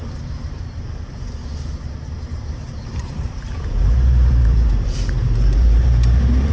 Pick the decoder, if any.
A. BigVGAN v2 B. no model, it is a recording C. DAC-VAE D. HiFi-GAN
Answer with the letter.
A